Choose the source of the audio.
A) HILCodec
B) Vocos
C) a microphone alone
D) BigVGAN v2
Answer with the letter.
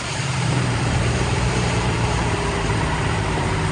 D